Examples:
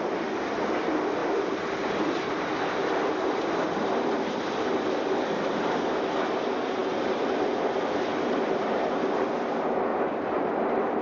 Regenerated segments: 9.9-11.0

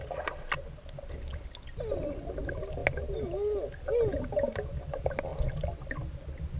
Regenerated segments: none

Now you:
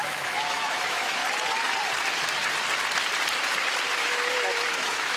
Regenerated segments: 0.0-1.2; 4.0-5.2

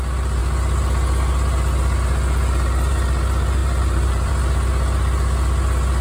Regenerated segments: 3.6-4.3

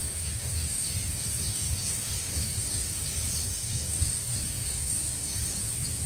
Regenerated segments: 0.0-3.0; 3.4-5.6